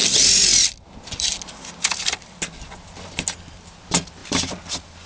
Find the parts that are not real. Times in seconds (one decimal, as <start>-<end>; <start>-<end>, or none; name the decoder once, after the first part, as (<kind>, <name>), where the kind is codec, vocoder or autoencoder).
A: none